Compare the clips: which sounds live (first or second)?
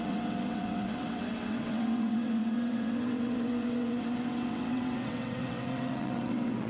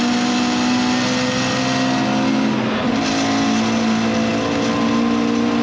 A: second